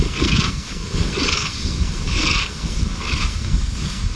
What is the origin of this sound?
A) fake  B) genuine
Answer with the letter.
A